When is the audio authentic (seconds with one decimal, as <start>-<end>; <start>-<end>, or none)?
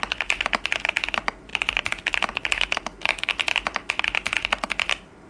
0.0-5.3